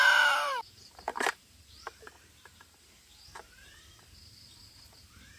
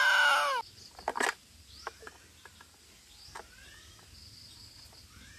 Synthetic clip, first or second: first